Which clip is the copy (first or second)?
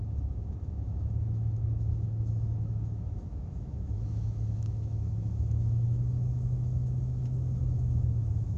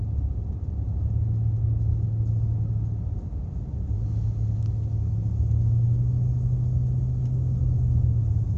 first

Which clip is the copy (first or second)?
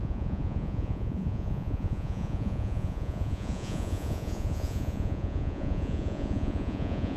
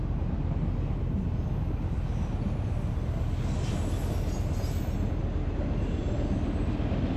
first